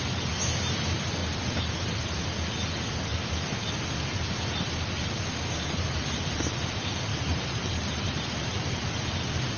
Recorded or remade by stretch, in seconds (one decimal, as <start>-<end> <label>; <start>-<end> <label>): 0.0-1.2 recorded; 1.2-2.0 remade; 2.0-7.1 recorded; 7.1-8.2 remade; 8.2-9.6 recorded